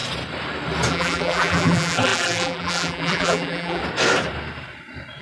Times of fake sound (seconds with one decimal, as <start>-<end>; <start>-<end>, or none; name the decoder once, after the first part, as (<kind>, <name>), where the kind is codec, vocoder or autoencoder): 0.9-3.8 (vocoder, BigVGAN v2)